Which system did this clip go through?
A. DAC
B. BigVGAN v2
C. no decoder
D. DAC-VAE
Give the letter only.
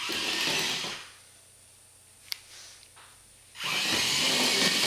C